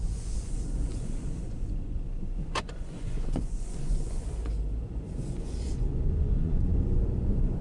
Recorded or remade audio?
remade